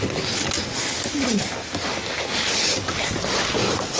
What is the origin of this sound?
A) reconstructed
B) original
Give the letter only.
B